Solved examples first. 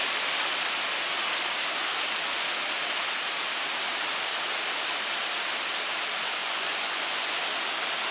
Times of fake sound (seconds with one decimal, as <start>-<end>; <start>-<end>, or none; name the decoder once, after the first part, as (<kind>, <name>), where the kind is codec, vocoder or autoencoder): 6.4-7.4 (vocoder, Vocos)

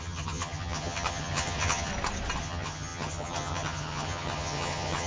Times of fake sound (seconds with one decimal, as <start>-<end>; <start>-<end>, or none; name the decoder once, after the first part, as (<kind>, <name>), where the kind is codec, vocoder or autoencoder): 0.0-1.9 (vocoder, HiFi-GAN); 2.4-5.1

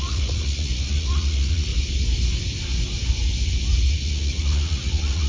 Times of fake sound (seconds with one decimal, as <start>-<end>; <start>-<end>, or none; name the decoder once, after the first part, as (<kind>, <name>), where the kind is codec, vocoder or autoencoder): 0.0-1.7 (vocoder, Vocos); 3.9-5.3

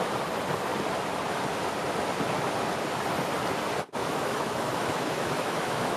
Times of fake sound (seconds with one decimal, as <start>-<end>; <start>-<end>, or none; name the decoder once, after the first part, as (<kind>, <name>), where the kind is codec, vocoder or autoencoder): 4.0-6.0 (autoencoder, DAC-VAE)